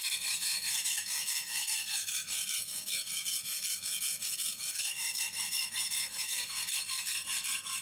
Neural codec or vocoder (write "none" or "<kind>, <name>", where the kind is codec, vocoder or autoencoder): codec, SNAC